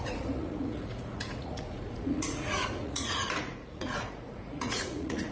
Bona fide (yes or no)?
no